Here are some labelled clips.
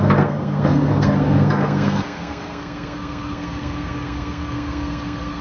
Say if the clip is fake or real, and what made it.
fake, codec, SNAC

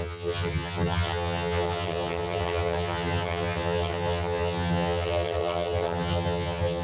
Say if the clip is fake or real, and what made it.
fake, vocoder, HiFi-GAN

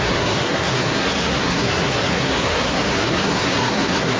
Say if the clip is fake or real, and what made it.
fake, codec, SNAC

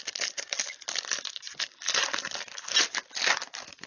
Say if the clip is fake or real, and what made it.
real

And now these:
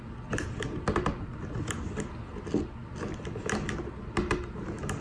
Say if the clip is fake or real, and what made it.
real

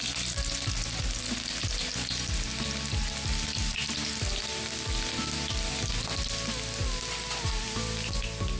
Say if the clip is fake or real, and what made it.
real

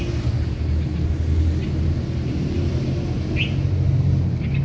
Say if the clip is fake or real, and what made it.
real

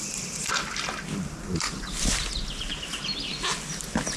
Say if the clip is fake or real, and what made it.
real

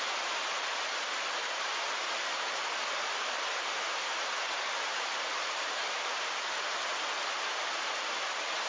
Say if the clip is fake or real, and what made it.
fake, vocoder, BigVGAN v2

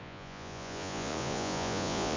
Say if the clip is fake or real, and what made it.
fake, vocoder, Vocos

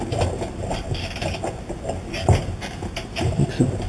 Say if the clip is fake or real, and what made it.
real